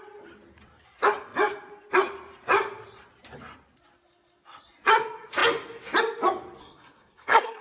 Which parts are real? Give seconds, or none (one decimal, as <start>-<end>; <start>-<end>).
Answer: 0.0-6.6